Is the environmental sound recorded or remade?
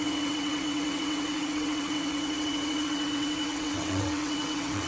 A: remade